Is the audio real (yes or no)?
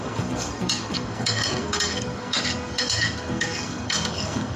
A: no